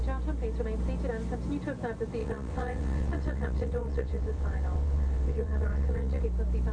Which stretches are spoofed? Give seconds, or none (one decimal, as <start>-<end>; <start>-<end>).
2.2-6.2